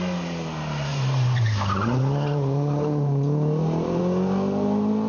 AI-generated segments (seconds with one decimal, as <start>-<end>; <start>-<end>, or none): 0.9-4.0